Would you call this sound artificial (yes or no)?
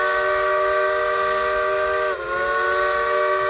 no